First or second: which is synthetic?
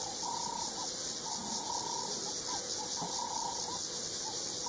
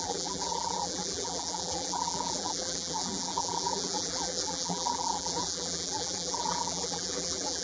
second